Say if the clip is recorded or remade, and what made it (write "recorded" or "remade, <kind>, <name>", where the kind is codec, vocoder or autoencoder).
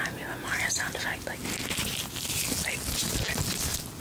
recorded